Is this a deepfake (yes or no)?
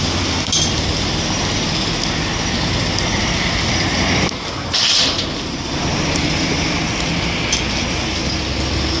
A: no